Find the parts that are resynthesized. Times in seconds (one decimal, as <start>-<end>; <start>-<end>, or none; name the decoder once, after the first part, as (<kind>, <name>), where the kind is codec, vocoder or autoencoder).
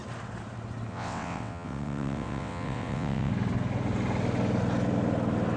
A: 0.9-3.3 (vocoder, WaveNeXt)